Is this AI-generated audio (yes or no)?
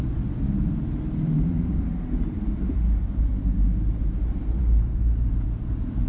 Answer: yes